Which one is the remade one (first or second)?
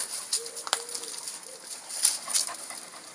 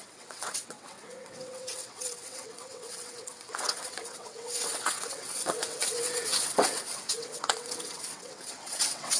second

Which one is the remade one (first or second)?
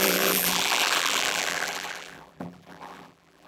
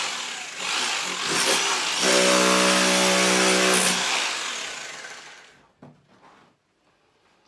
first